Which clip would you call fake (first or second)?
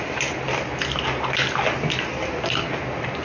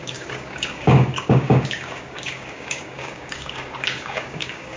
second